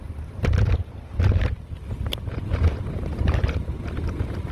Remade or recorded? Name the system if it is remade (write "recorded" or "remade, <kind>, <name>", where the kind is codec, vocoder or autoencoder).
recorded